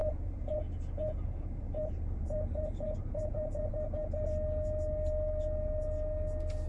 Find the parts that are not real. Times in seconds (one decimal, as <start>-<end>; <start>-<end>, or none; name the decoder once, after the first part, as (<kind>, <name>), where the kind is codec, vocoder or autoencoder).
0.0-3.7 (vocoder, Vocos)